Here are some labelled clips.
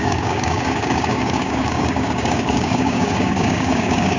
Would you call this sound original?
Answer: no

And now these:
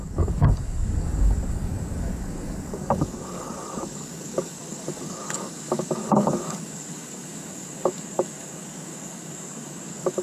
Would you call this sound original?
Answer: no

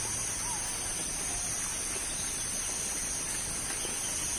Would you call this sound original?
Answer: yes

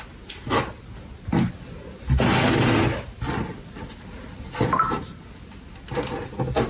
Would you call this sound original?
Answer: yes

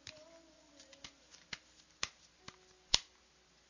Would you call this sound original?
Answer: yes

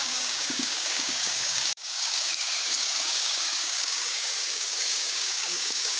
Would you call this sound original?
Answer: no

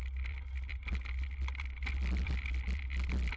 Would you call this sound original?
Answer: yes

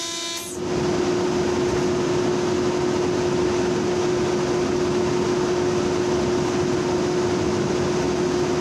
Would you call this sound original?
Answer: yes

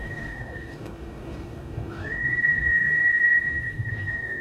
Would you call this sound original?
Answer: no